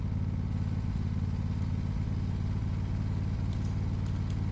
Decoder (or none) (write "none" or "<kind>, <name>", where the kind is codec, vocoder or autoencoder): none